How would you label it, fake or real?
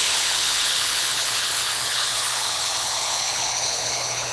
fake